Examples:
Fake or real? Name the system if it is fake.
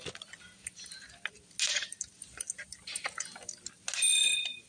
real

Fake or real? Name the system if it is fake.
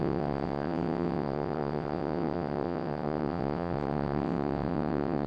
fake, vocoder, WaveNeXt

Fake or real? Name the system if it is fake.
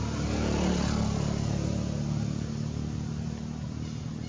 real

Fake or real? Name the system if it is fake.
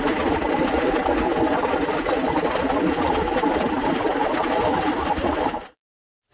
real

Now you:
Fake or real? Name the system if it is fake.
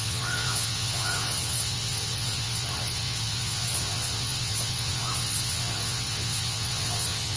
fake, vocoder, WaveNeXt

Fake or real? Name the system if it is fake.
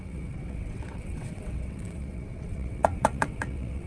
fake, vocoder, WaveNeXt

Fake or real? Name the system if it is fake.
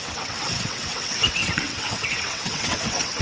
fake, vocoder, WaveNeXt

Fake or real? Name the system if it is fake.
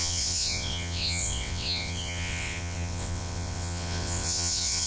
fake, vocoder, WaveNeXt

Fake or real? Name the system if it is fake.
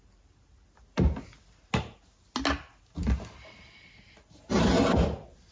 real